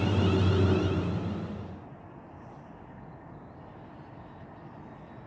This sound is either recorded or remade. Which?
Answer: recorded